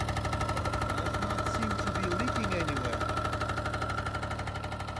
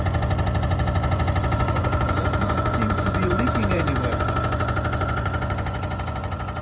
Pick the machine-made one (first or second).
second